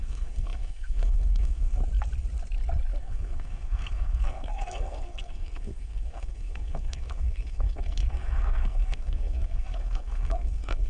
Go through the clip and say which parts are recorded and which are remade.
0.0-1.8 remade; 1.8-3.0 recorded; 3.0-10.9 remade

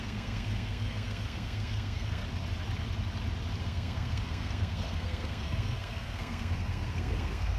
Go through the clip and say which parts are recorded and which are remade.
0.0-2.2 remade; 2.2-3.6 recorded; 3.6-7.6 remade

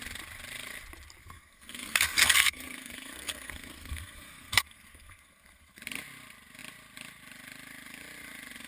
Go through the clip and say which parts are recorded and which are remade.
0.0-1.2 recorded; 1.2-5.8 remade; 5.8-8.7 recorded

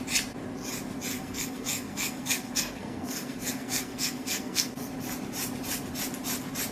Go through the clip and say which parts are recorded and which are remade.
0.0-1.1 recorded; 1.1-4.9 remade; 4.9-6.7 recorded

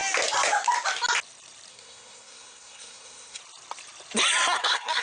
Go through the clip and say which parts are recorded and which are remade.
0.0-1.7 recorded; 1.7-3.4 remade; 3.4-4.6 recorded; 4.6-5.0 remade

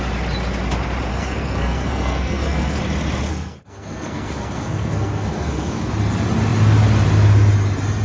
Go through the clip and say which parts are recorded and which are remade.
0.0-1.1 recorded; 1.1-2.8 remade; 2.8-3.3 recorded; 3.3-5.9 remade; 5.9-8.0 recorded

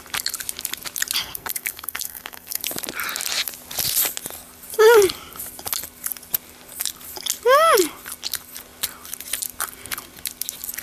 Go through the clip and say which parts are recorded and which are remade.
0.0-1.2 recorded; 1.2-2.6 remade; 2.6-10.8 recorded